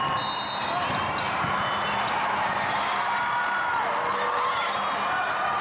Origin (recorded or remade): recorded